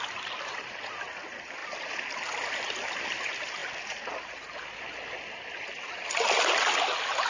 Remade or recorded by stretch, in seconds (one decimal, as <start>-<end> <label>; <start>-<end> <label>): 0.0-7.3 recorded